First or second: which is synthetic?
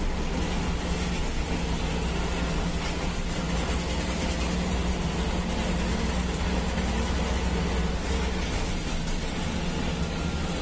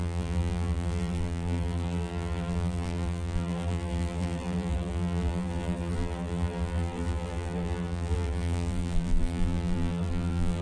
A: second